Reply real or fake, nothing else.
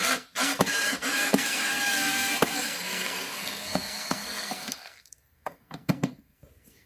fake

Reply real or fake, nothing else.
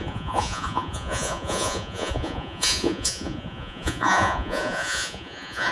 fake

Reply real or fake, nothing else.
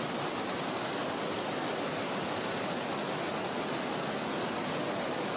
real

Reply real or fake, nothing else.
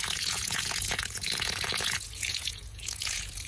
fake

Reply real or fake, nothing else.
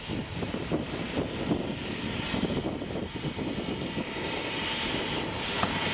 real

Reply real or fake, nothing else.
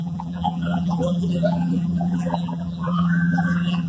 fake